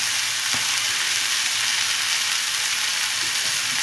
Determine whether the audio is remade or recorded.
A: recorded